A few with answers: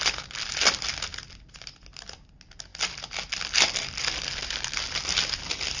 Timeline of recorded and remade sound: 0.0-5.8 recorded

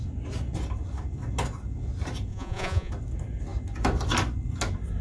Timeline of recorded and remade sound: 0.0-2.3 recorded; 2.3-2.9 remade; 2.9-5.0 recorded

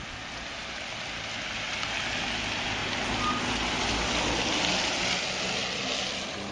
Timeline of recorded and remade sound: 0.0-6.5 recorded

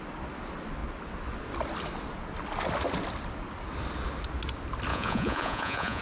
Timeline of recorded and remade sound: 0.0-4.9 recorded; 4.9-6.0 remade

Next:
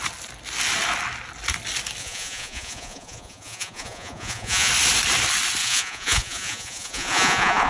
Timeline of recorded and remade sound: 0.0-2.0 recorded; 2.0-4.7 remade; 4.7-5.6 recorded; 5.6-7.7 remade

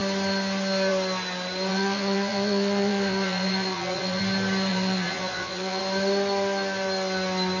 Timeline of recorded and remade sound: 0.0-1.7 recorded; 1.7-4.2 remade; 4.2-4.7 recorded; 4.7-5.8 remade; 5.8-7.6 recorded

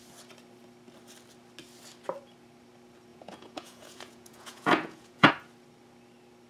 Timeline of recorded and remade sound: 0.0-3.1 recorded; 3.1-5.3 remade; 5.3-6.5 recorded

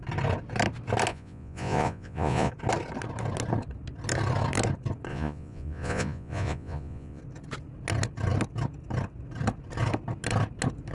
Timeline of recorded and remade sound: 0.0-1.1 recorded; 1.1-2.5 remade; 2.5-5.1 recorded; 5.1-7.2 remade; 7.2-10.9 recorded